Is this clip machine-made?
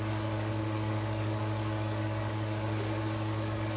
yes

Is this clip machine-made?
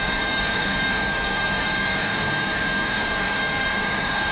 yes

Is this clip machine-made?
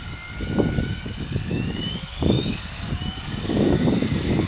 yes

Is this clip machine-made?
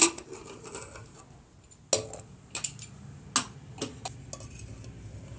no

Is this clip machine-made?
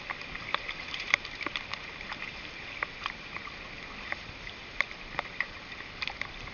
no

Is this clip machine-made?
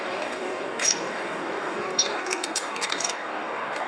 yes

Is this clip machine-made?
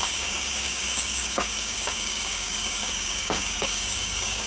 yes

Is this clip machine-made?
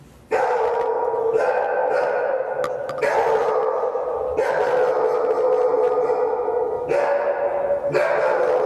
no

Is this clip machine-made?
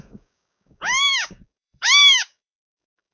yes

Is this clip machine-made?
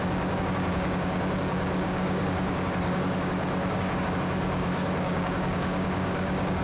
yes